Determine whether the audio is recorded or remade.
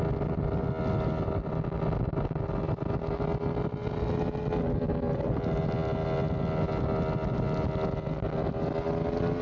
recorded